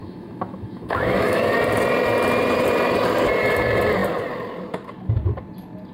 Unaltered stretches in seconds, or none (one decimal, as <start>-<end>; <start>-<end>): 1.5-5.9